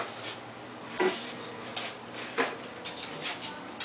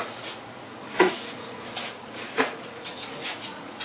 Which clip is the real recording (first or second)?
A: first